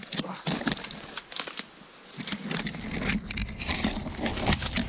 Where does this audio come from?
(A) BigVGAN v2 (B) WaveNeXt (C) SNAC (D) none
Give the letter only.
D